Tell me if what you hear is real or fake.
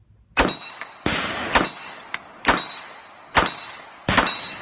real